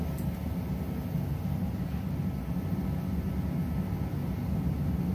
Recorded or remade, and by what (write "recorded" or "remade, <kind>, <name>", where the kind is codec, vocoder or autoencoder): recorded